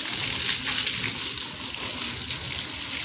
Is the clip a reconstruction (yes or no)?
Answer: no